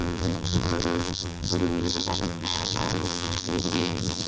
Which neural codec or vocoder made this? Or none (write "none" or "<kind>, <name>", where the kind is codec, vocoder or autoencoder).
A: vocoder, BigVGAN v2